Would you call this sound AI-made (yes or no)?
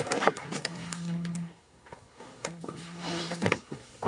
yes